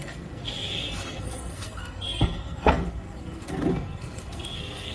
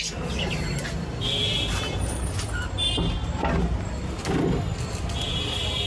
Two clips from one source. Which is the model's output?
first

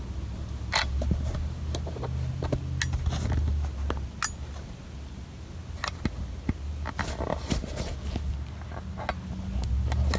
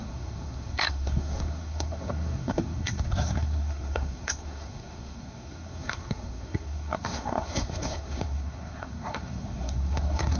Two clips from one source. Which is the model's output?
second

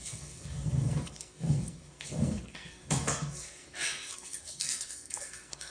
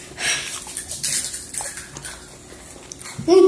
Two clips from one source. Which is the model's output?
first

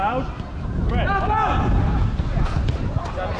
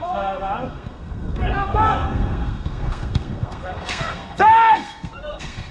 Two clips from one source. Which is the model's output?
second